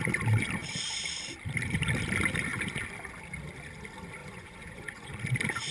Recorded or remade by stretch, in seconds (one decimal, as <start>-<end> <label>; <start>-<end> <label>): 0.0-4.2 recorded; 4.2-5.1 remade; 5.1-5.7 recorded